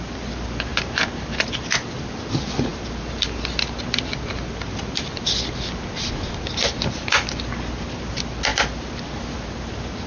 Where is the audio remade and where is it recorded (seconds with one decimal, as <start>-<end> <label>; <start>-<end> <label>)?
0.0-10.1 recorded